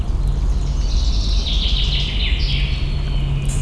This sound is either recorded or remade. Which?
recorded